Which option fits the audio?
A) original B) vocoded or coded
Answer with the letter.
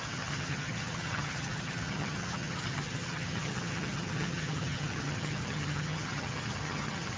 B